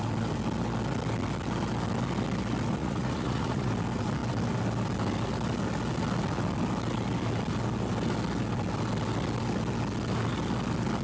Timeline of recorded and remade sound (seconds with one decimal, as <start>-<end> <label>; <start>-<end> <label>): 0.0-2.8 recorded; 2.8-3.7 remade; 3.7-11.0 recorded

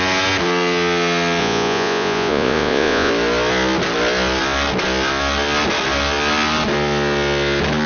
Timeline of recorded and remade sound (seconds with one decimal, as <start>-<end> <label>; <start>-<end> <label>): 0.0-1.4 recorded; 1.4-3.1 remade; 3.1-7.9 recorded

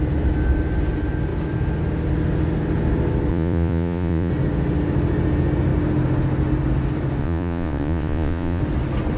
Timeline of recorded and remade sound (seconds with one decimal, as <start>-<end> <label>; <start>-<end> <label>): 0.0-3.3 recorded; 3.3-4.3 remade; 4.3-7.2 recorded; 7.2-8.6 remade; 8.6-9.2 recorded

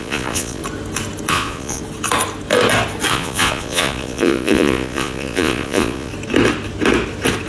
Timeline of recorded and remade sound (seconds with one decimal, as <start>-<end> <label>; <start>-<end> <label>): 0.0-0.6 remade; 0.6-1.3 recorded; 1.3-1.8 remade; 1.8-3.1 recorded; 3.1-6.1 remade; 6.1-7.5 recorded

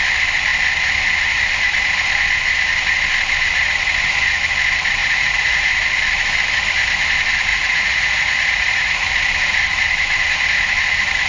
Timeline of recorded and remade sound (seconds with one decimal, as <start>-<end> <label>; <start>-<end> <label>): 0.0-5.0 recorded; 5.0-5.7 remade; 5.7-7.5 recorded; 7.5-9.1 remade; 9.1-11.3 recorded

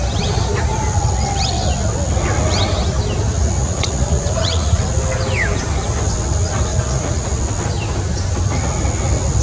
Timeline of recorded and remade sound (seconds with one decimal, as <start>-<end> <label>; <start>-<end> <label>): 0.0-3.6 recorded; 3.6-4.8 remade; 4.8-6.7 recorded; 6.7-7.3 remade; 7.3-9.4 recorded